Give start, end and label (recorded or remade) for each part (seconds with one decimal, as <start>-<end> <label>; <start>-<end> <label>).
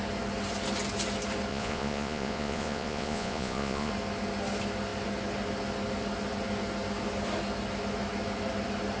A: 0.0-1.5 recorded; 1.5-3.9 remade; 3.9-9.0 recorded